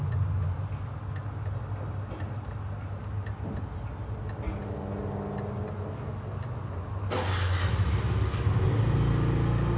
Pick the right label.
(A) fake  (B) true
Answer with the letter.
B